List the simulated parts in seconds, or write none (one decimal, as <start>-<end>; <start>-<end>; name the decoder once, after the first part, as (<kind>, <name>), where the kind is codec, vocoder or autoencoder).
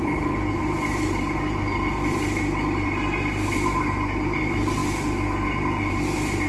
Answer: 0.0-4.8 (vocoder, BigVGAN v2); 5.9-6.5